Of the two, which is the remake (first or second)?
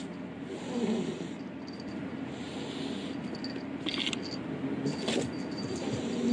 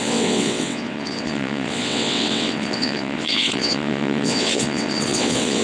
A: second